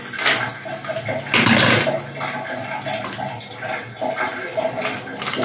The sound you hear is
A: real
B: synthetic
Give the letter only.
A